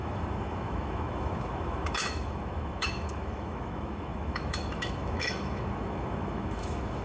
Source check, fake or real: fake